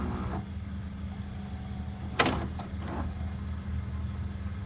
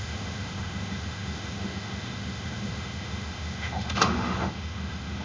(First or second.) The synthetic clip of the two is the second